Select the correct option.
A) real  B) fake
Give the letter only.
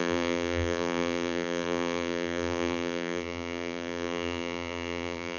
B